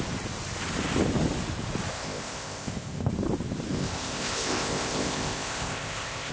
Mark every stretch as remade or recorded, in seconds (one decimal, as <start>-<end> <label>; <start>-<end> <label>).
0.0-1.9 recorded; 1.9-3.1 remade; 3.1-3.7 recorded; 3.7-6.3 remade